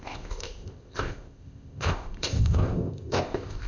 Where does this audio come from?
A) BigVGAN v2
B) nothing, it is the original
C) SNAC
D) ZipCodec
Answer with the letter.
D